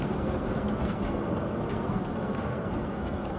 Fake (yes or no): yes